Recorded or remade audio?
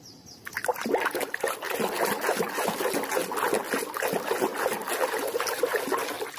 recorded